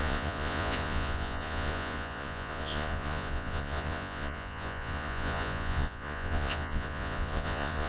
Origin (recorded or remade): remade